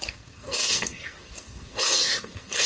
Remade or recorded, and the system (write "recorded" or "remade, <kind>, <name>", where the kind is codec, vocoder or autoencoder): remade, codec, SNAC